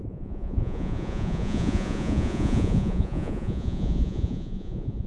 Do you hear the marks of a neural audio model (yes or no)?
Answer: yes